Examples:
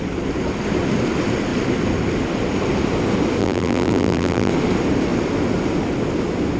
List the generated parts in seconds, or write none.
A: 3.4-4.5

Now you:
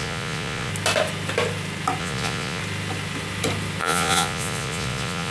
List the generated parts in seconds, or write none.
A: 0.0-0.7; 2.0-2.6; 3.8-5.3

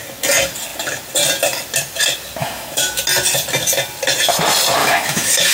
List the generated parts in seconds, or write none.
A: 2.4-3.0; 4.8-5.5

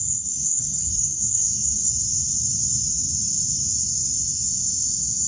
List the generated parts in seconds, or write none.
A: 0.0-1.9

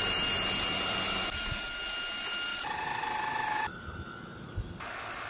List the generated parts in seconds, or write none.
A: 2.5-3.0

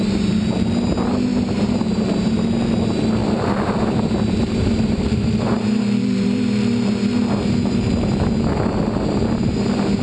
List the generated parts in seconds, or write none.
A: 1.3-2.4; 3.2-7.3